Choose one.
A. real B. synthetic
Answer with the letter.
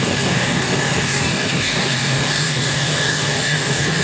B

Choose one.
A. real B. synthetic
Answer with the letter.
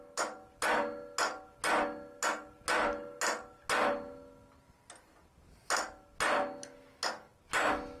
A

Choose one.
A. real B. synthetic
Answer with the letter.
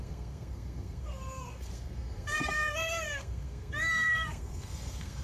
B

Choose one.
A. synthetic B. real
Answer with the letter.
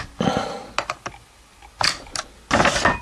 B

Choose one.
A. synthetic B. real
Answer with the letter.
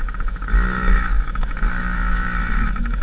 A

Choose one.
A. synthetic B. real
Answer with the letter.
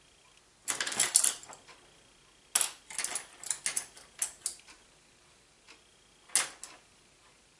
B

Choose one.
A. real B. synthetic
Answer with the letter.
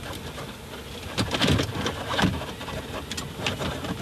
A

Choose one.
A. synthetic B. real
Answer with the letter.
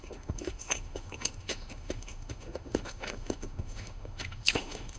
A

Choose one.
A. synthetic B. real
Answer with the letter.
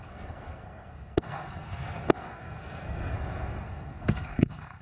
A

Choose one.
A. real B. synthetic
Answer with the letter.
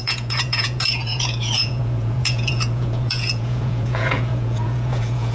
B